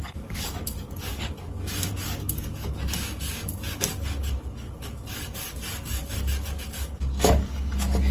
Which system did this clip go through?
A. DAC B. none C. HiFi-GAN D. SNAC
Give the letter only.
A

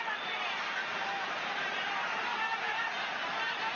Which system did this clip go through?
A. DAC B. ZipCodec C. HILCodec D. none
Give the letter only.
D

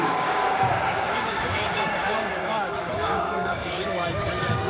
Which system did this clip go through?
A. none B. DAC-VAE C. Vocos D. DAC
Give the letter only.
D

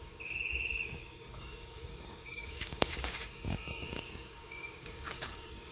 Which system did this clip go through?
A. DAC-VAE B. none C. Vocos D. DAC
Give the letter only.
D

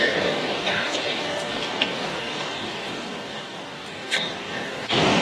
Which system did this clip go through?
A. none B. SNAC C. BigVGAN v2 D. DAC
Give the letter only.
D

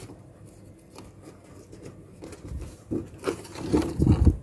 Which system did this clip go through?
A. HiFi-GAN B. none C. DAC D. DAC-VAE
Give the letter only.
B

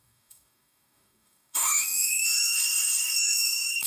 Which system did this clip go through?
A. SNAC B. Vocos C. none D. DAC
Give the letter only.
D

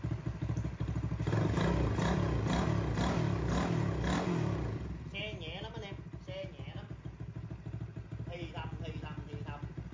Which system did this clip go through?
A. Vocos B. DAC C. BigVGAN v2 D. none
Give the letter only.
D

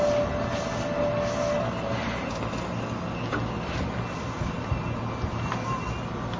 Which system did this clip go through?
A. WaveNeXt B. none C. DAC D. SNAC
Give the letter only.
B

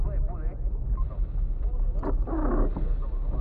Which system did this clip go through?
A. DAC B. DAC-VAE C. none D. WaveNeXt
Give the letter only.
C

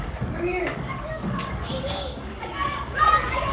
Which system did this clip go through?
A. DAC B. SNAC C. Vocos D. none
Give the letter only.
A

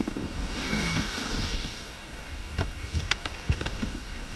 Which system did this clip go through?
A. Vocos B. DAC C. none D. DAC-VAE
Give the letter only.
B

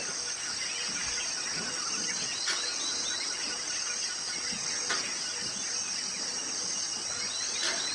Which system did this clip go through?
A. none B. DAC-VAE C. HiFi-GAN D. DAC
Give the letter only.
A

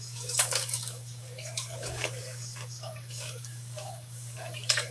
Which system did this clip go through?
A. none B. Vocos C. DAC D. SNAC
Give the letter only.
C